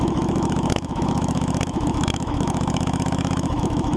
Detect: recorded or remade remade